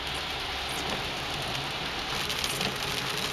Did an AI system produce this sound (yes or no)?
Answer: no